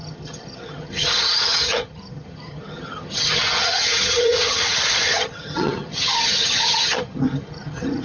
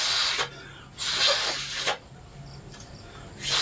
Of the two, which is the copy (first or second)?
first